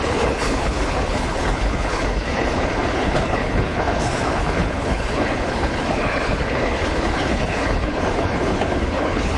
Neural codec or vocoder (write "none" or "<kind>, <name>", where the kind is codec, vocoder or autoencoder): codec, HILCodec